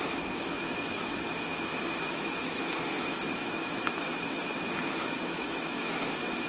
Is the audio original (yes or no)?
no